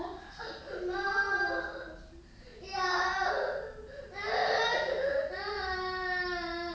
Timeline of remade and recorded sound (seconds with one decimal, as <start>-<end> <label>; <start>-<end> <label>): 0.0-6.7 recorded